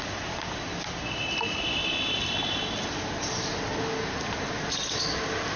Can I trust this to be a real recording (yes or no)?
yes